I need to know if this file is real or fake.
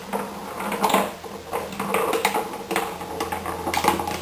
real